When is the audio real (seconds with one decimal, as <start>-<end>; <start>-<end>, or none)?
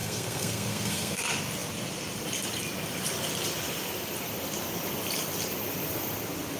1.2-6.6